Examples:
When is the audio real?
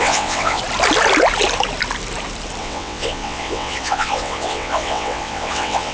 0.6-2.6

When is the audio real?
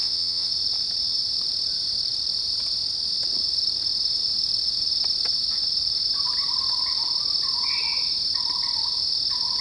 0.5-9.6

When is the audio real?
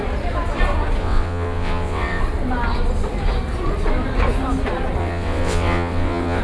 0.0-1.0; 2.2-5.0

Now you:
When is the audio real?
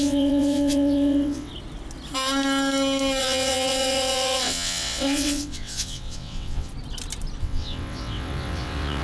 1.5-3.2; 6.7-7.4